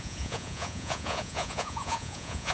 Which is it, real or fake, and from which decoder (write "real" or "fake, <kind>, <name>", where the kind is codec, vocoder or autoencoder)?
fake, vocoder, Vocos